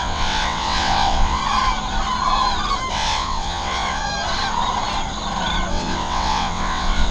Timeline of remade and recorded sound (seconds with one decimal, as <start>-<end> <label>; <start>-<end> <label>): 0.0-1.4 remade; 1.4-2.9 recorded; 2.9-4.0 remade; 4.0-5.7 recorded; 5.7-7.1 remade